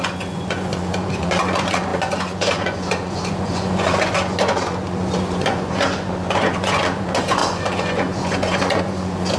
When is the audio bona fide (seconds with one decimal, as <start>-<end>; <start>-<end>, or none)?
none